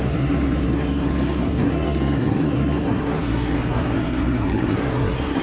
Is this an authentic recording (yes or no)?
no